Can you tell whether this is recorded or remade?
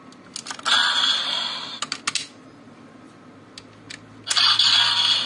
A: recorded